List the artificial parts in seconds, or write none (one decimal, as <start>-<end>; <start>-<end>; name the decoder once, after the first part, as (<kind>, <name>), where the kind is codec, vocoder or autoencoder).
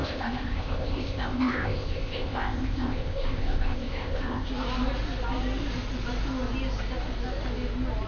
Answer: 0.0-4.5 (codec, ZipCodec)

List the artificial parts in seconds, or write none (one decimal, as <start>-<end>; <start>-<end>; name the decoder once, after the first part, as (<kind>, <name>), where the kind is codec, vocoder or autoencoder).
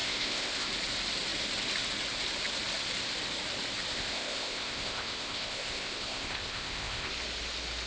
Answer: 0.0-0.7 (codec, ZipCodec); 3.9-7.1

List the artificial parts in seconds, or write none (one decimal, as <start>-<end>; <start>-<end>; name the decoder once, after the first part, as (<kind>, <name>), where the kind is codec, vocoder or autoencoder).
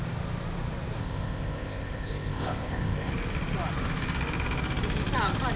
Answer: 1.0-3.1 (codec, ZipCodec)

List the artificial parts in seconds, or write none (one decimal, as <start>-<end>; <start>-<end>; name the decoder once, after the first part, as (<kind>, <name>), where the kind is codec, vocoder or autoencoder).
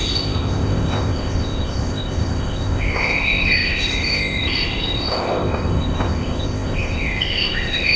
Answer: 0.0-8.0 (codec, ZipCodec)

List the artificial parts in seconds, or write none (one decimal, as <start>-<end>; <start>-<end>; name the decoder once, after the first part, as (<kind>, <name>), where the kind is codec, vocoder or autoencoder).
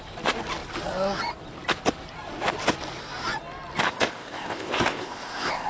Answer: 3.8-5.7 (codec, ZipCodec)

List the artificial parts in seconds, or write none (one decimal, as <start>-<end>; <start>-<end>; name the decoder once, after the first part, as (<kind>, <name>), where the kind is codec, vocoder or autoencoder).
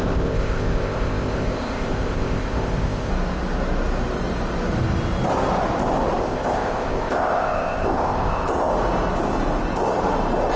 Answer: 0.0-3.1 (codec, ZipCodec); 6.2-8.7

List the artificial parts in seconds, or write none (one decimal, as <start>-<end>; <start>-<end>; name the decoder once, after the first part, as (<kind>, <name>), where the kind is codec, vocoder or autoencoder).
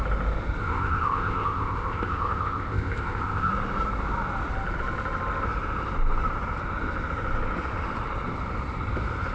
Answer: 0.6-3.5 (codec, ZipCodec)